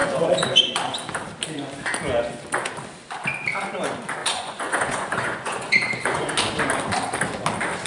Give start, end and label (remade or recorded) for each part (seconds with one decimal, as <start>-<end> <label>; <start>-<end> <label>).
0.0-0.7 remade; 0.7-4.2 recorded; 4.2-6.3 remade; 6.3-7.9 recorded